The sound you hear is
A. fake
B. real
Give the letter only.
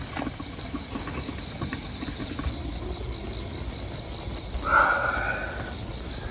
B